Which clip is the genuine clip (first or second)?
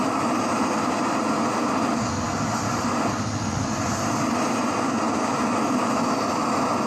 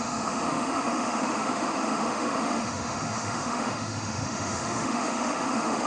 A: first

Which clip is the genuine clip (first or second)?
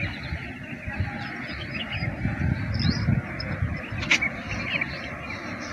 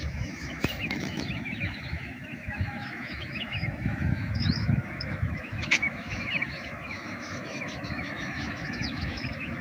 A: first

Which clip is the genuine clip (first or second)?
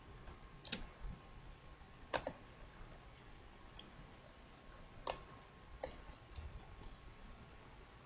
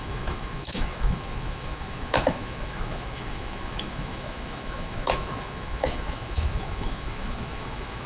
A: first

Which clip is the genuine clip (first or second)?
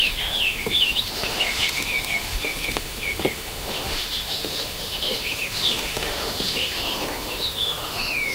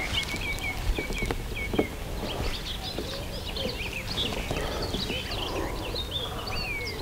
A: second